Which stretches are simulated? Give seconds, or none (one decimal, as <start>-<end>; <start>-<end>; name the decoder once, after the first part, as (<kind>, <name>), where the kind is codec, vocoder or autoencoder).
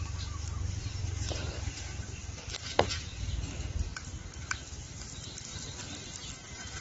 0.0-2.2 (vocoder, BigVGAN v2); 6.3-6.8